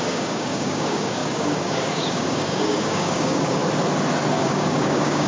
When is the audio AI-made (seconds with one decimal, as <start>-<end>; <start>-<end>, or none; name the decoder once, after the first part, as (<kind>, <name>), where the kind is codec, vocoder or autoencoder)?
0.0-3.6 (codec, DAC); 4.4-5.3